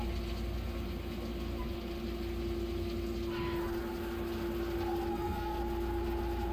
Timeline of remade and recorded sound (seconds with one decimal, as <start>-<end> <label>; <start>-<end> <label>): 0.0-5.1 recorded; 5.1-5.6 remade; 5.6-6.5 recorded

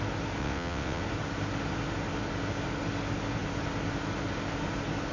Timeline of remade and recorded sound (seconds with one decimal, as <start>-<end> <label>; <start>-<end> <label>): 0.0-0.4 recorded; 0.4-1.0 remade; 1.0-5.1 recorded

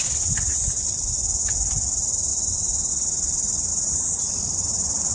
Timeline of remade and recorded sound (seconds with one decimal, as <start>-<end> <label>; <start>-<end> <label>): 0.0-3.7 recorded; 3.7-4.3 remade; 4.3-5.1 recorded

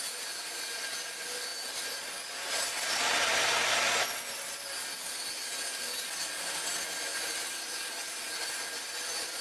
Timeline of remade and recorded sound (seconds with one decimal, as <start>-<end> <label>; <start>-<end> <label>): 0.0-9.4 recorded

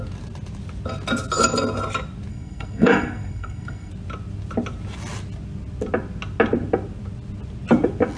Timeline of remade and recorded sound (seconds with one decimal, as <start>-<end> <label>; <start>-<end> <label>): 0.0-2.3 recorded; 2.3-3.9 remade; 3.9-8.2 recorded

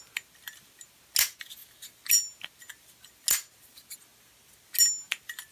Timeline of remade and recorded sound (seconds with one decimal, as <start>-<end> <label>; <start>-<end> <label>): 0.0-5.5 recorded